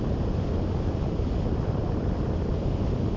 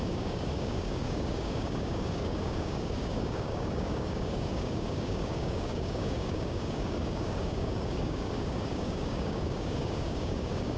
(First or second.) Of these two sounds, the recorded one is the first